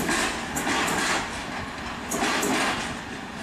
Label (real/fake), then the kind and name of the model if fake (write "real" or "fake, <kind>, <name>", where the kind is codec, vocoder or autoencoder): real